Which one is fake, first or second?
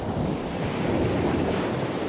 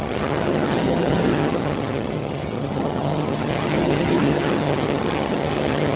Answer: second